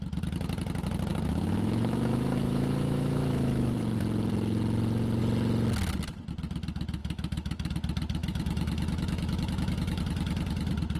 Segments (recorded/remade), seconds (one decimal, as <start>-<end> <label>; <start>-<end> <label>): 0.0-1.1 recorded; 1.1-3.8 remade; 3.8-7.0 recorded; 7.0-7.7 remade; 7.7-8.2 recorded; 8.2-10.0 remade; 10.0-11.0 recorded